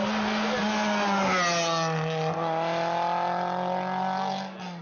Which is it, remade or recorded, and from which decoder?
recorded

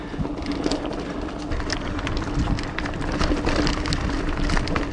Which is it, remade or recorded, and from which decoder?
recorded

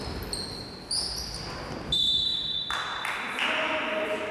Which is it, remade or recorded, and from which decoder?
recorded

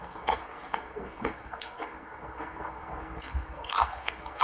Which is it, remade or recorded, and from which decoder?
remade, codec, SNAC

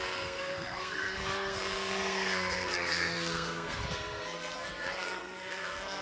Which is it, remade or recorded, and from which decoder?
remade, codec, SNAC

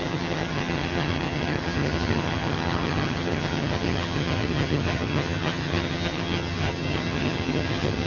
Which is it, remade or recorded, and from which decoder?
remade, vocoder, HiFi-GAN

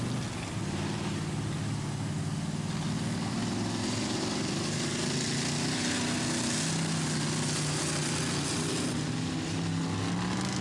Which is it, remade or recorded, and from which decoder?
recorded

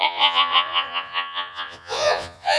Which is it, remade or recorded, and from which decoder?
remade, vocoder, Vocos